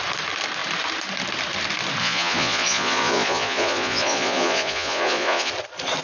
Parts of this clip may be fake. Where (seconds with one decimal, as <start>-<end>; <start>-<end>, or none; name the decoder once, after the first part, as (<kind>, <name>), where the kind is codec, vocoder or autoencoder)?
2.0-5.5 (vocoder, Vocos)